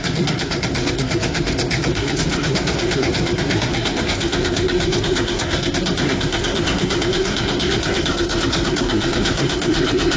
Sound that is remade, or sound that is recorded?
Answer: remade